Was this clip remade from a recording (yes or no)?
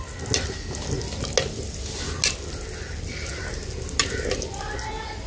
no